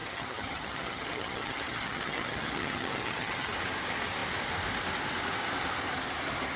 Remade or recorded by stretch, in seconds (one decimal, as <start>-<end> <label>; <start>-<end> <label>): 0.0-3.5 remade; 3.5-6.6 recorded